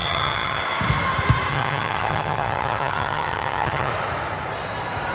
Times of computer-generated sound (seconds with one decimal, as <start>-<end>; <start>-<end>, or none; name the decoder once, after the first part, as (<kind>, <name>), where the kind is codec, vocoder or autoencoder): 0.0-0.6 (vocoder, HiFi-GAN); 1.5-3.9